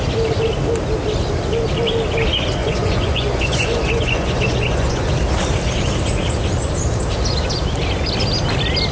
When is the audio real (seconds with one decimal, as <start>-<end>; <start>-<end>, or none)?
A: 0.0-2.6; 5.1-8.9